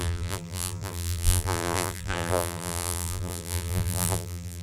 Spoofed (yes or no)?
yes